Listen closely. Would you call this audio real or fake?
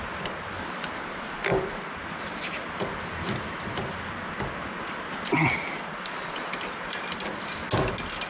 real